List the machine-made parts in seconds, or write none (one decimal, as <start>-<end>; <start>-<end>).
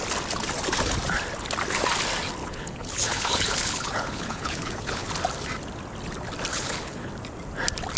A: 2.4-5.1; 6.5-7.1